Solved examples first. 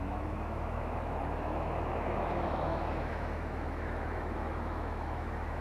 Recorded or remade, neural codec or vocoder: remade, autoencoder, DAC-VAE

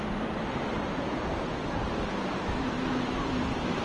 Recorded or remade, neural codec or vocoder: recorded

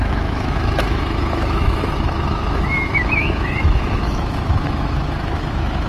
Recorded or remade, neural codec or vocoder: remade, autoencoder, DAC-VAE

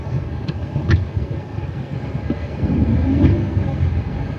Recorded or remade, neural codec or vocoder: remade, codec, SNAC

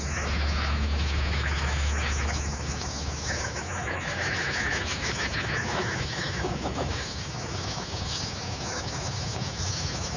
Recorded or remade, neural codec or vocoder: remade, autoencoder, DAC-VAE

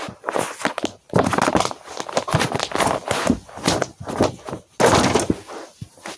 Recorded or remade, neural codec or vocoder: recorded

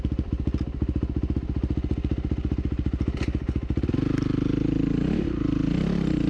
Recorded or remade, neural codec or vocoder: recorded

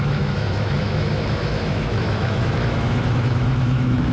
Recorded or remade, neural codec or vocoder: remade, autoencoder, DAC-VAE